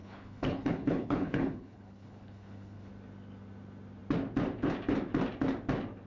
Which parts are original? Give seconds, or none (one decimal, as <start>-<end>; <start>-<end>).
2.9-6.1